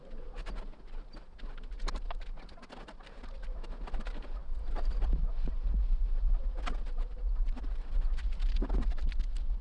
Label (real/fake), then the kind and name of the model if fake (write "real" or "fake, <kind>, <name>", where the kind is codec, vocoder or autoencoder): real